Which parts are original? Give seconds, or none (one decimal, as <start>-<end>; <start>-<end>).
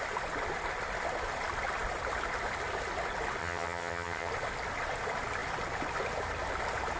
0.0-3.4; 4.3-7.0